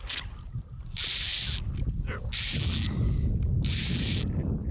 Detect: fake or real real